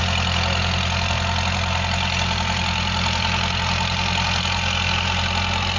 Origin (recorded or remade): recorded